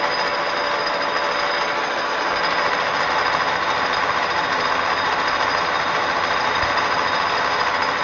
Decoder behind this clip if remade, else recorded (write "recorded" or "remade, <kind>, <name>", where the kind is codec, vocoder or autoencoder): recorded